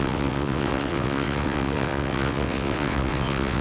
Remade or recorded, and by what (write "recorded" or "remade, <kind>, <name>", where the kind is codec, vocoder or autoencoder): remade, vocoder, WaveNeXt